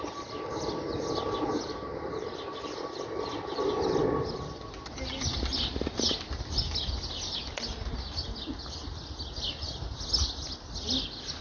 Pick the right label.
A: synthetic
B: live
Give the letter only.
B